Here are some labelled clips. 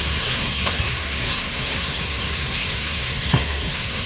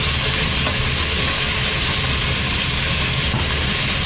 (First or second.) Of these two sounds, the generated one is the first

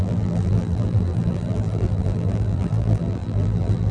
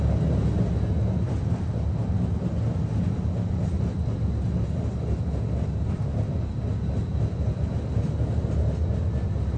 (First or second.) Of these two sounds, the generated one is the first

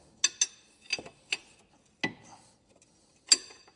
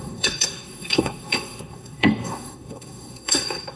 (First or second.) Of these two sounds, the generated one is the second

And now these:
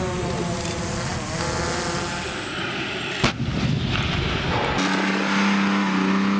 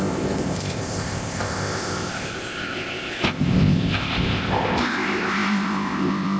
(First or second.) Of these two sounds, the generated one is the second